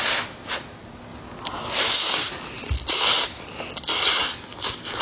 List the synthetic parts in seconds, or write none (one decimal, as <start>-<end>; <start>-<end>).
none